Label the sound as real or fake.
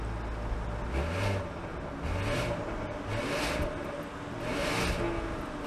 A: real